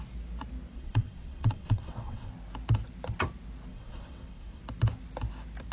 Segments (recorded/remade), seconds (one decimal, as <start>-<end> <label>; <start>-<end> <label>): 0.0-0.7 recorded; 0.7-2.3 remade; 2.3-3.7 recorded; 3.7-4.6 remade; 4.6-5.7 recorded